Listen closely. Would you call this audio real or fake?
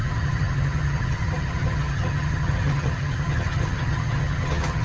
fake